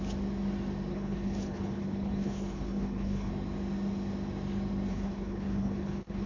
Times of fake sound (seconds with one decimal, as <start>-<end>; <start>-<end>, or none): 0.9-3.3; 4.9-6.3